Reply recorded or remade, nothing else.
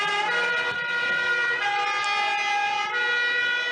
recorded